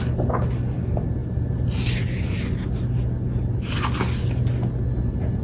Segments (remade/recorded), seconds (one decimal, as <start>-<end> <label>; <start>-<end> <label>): 0.0-5.4 recorded